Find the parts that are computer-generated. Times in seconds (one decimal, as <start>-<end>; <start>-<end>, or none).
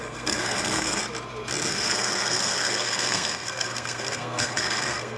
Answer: 0.0-1.0; 1.7-5.2